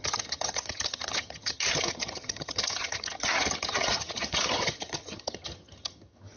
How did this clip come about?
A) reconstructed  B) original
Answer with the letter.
A